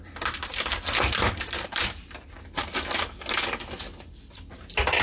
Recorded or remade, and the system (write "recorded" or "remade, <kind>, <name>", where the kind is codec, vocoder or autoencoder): recorded